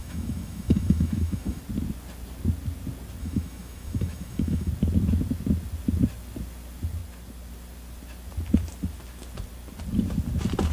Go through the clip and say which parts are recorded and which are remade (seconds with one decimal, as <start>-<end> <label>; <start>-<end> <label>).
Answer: 0.0-1.6 remade; 1.6-3.2 recorded; 3.2-4.7 remade; 4.7-10.7 recorded